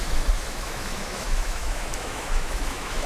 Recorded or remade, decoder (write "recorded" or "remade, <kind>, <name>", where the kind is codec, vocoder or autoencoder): remade, autoencoder, DAC-VAE